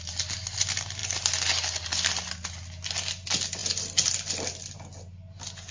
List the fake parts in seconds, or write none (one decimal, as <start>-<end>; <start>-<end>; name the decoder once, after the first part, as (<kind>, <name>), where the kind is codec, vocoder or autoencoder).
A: none

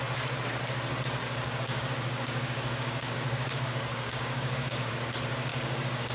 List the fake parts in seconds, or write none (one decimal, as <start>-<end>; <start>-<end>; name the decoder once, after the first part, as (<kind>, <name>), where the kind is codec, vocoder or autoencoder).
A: 1.2-4.9 (codec, DAC); 5.5-6.1